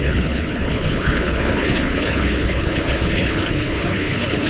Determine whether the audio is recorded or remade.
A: remade